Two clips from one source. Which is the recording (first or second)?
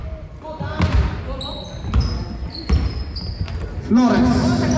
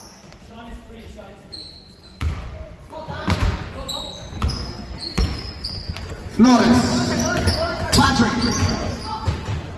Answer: first